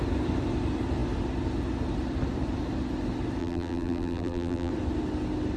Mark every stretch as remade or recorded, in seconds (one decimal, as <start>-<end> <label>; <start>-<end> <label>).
0.0-3.4 recorded; 3.4-4.7 remade; 4.7-5.6 recorded